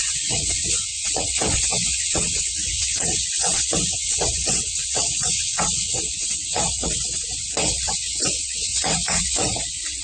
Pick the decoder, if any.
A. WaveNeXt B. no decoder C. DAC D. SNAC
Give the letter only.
A